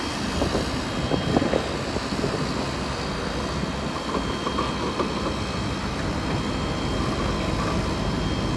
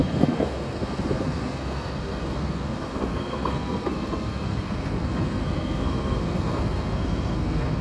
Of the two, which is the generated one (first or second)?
second